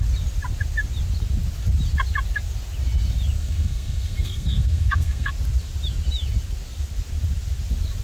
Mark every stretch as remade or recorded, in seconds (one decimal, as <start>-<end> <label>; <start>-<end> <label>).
0.0-3.4 recorded; 3.4-5.3 remade; 5.3-8.0 recorded

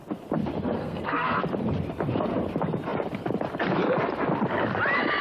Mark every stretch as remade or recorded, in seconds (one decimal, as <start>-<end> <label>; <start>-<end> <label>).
0.0-0.8 recorded; 0.8-1.4 remade; 1.4-5.2 recorded

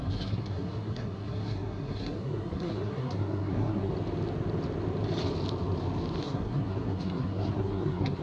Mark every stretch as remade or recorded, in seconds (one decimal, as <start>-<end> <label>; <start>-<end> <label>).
0.0-3.9 remade; 3.9-6.2 recorded; 6.2-8.2 remade

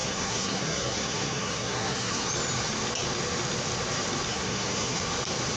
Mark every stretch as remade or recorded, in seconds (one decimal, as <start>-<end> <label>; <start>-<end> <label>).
0.0-2.3 remade; 2.3-4.3 recorded; 4.3-5.0 remade; 5.0-5.6 recorded